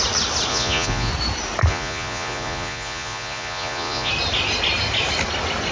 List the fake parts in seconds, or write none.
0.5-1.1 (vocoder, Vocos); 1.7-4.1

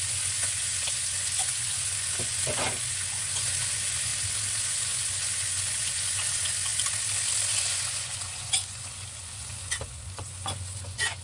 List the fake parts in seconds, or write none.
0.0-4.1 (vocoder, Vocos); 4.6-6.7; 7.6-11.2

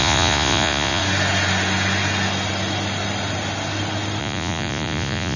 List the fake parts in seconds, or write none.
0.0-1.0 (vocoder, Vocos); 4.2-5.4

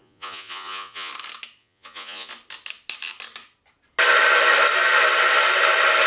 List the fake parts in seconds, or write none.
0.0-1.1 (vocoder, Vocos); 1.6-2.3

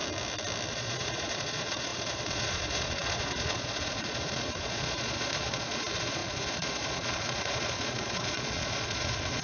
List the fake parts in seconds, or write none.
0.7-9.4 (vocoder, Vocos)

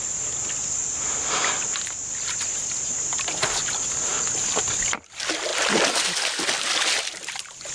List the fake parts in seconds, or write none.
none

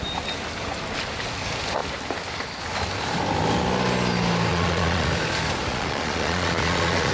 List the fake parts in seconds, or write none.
4.5-5.1 (vocoder, Vocos); 5.7-7.1